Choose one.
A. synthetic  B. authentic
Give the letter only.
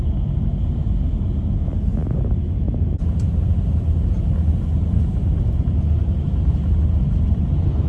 B